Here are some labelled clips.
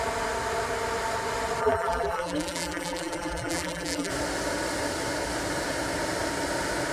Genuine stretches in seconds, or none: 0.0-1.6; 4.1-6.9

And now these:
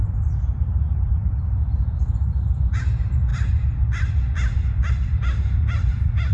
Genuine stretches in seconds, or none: 3.3-4.9

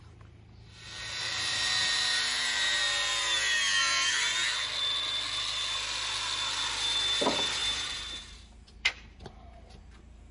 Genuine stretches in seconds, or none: 3.1-3.8; 4.3-6.7

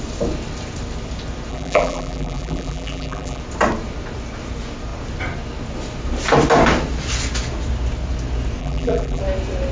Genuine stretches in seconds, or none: 0.0-1.5; 3.4-8.6; 9.2-9.7

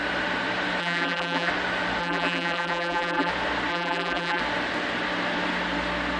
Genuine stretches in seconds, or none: 0.0-0.8; 1.5-2.0; 3.3-3.7; 4.4-6.2

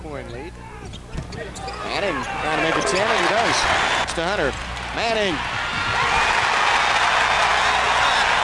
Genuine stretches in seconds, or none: 0.0-8.4

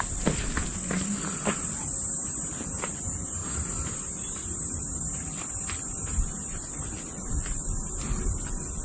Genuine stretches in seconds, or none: 0.0-8.8

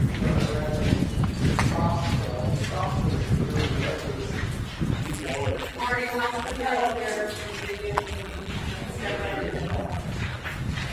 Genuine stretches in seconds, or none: 0.0-5.0; 7.0-7.6; 8.5-9.4; 10.0-10.9